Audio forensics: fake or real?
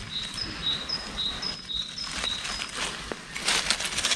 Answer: real